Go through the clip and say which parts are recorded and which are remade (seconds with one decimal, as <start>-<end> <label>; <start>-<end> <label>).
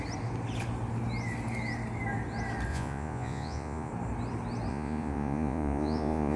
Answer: 0.0-2.7 recorded; 2.7-3.9 remade; 3.9-4.7 recorded; 4.7-6.4 remade